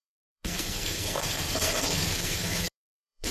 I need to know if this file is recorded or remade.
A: remade